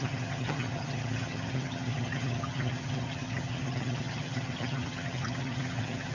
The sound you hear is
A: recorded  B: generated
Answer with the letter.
B